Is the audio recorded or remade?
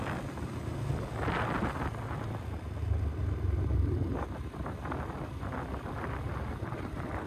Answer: recorded